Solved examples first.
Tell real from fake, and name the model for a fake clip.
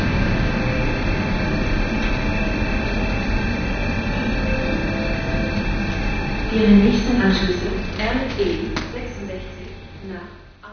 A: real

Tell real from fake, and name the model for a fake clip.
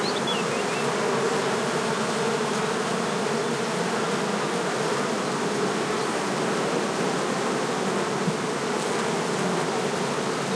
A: real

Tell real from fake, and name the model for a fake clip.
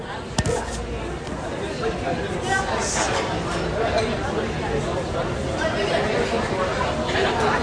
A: real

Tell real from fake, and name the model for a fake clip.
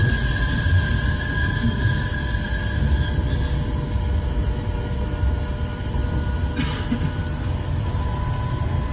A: real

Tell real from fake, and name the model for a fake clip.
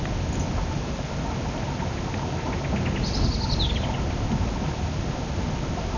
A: real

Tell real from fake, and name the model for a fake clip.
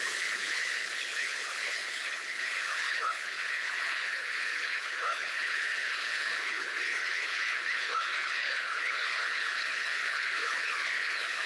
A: fake, codec, HILCodec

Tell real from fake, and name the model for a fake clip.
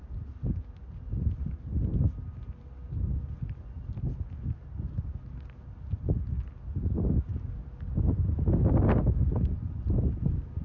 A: real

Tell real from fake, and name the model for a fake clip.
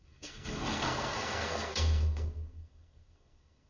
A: fake, codec, SNAC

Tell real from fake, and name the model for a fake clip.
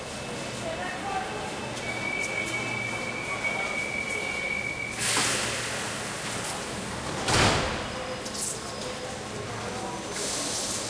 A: real